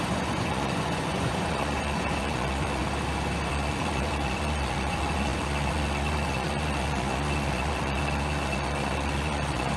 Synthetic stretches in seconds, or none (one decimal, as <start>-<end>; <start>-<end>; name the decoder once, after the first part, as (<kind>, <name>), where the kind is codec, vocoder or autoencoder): 0.0-2.8 (vocoder, Vocos); 3.5-9.8